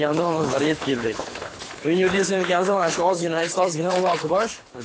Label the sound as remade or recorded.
remade